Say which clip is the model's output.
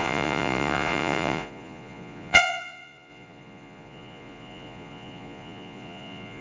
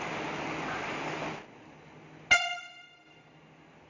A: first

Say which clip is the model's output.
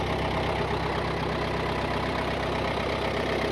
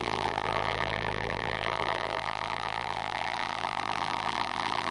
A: second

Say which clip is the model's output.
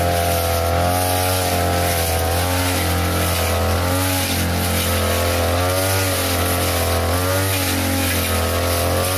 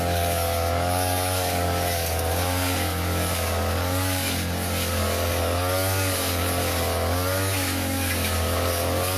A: second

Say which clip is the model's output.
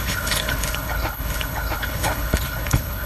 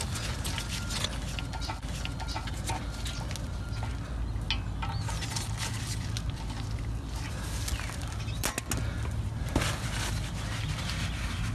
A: first